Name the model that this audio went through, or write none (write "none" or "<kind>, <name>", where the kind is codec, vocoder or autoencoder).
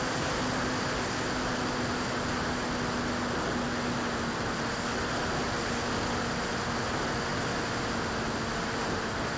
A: none